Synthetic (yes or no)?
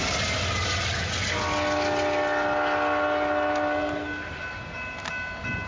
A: no